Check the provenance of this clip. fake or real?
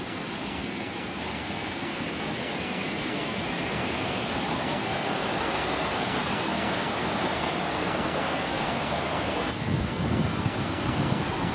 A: fake